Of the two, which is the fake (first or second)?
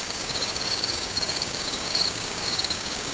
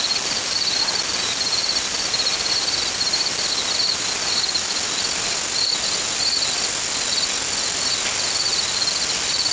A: first